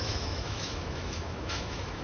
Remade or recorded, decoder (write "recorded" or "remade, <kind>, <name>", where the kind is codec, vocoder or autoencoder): remade, autoencoder, DAC-VAE